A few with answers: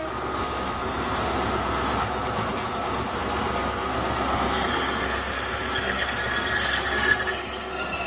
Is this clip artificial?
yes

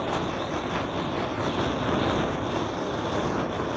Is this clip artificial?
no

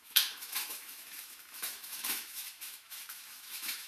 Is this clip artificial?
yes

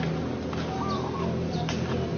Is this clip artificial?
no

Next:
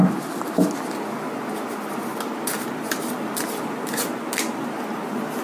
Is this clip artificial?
no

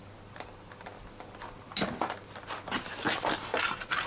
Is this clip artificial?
no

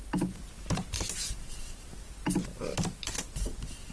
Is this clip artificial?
no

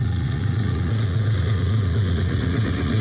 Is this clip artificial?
yes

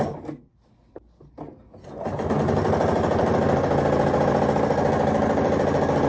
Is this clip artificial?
no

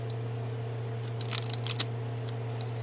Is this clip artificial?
no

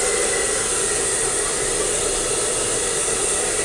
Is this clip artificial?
no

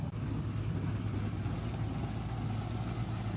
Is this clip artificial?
no